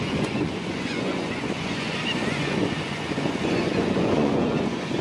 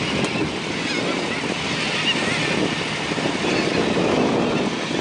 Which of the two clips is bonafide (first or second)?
second